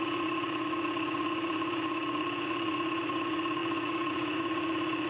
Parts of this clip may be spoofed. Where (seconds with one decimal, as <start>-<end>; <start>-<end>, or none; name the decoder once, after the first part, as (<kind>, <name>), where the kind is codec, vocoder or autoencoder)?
0.0-5.1 (vocoder, Vocos)